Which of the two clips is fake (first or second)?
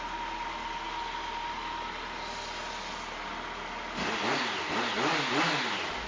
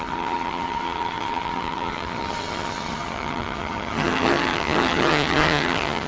second